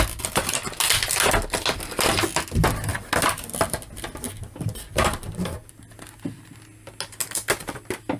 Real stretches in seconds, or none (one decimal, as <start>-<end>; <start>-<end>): 0.0-8.2